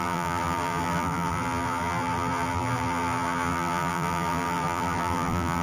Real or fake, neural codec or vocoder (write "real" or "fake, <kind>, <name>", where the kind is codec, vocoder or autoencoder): fake, vocoder, BigVGAN v2